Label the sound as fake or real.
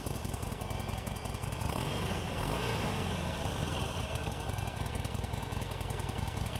fake